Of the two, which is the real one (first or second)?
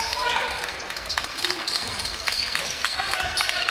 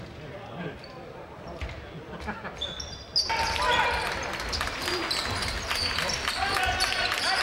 second